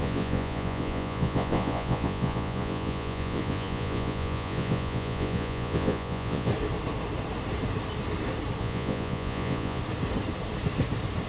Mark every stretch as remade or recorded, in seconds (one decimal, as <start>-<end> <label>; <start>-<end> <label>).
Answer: 0.0-6.5 remade; 6.5-8.6 recorded; 8.6-9.8 remade; 9.8-11.3 recorded